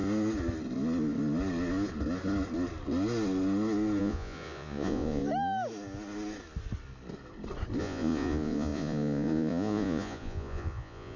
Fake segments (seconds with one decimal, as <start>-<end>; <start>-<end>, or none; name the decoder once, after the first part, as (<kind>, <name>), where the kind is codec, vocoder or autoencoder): 4.0-5.2 (vocoder, Vocos); 7.8-11.2